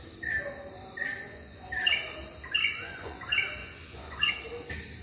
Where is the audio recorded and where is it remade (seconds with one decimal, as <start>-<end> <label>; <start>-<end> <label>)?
0.0-1.2 recorded; 1.2-1.7 remade; 1.7-2.6 recorded; 2.6-3.2 remade; 3.2-3.6 recorded; 3.6-4.3 remade; 4.3-5.0 recorded